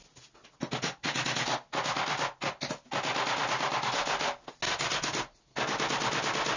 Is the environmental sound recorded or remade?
recorded